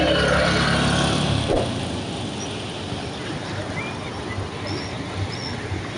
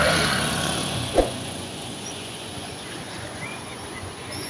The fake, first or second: second